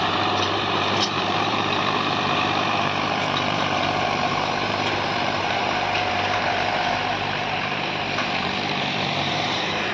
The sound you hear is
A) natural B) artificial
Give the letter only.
B